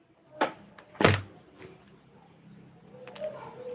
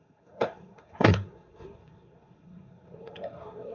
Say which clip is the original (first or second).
first